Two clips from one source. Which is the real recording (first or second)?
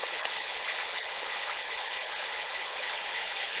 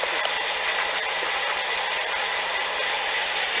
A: second